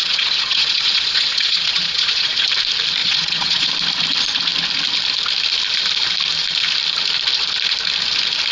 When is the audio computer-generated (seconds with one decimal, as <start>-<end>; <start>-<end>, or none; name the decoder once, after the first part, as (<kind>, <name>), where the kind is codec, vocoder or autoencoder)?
0.0-2.5 (vocoder, Vocos); 3.0-3.7